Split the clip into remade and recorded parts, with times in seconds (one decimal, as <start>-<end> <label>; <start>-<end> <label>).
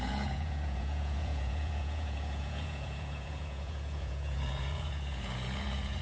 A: 0.0-6.0 remade